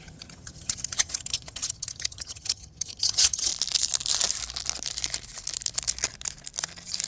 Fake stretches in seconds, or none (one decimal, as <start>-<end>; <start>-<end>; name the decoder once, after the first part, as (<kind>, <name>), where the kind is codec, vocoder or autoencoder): 0.0-3.5 (vocoder, HiFi-GAN)